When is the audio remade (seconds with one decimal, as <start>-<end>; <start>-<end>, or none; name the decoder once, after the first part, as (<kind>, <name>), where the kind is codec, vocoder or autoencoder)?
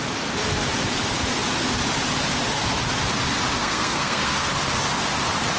3.6-4.5 (codec, SNAC)